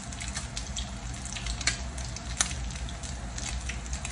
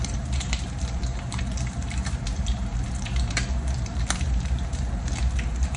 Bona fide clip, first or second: first